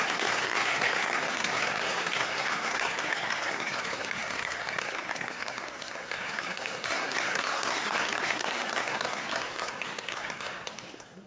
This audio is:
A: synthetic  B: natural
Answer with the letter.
A